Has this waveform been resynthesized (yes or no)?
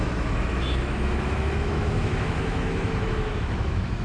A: yes